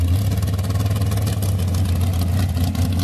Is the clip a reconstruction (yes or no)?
no